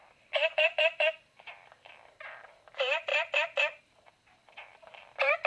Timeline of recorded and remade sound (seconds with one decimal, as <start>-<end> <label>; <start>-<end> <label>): 0.0-3.1 remade; 3.1-3.8 recorded; 3.8-5.5 remade